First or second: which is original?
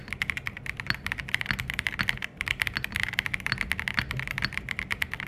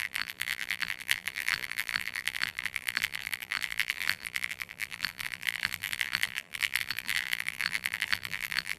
first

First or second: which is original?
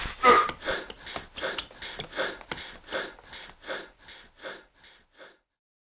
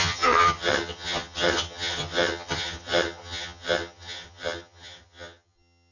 first